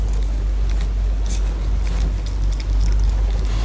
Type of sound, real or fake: real